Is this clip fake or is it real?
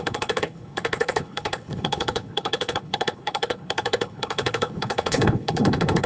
fake